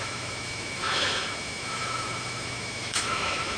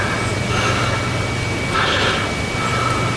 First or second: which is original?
second